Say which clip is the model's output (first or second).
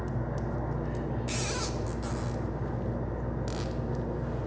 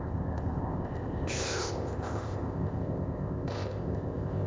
second